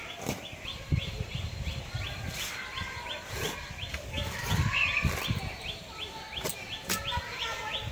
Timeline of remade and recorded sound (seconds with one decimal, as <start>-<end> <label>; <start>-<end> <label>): 0.0-3.9 recorded; 3.9-4.5 remade; 4.5-7.9 recorded